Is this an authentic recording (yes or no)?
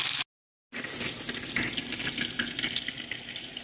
yes